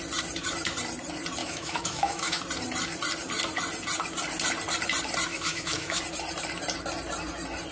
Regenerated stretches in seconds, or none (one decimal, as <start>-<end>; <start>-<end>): 1.4-2.4; 5.3-6.0